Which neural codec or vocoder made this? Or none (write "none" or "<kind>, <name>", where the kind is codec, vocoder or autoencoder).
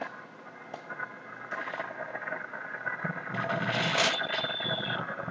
none